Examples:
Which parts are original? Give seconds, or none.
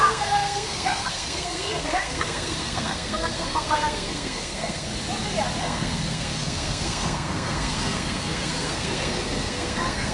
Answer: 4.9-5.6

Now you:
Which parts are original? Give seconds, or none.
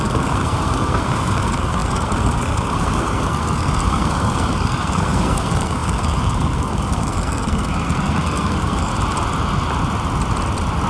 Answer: 8.9-10.9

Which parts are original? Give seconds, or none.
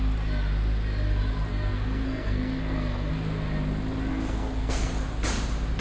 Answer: 0.0-1.5; 3.1-4.1; 4.9-5.8